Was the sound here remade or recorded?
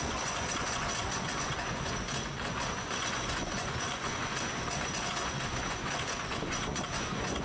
remade